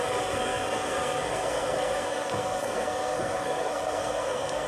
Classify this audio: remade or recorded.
remade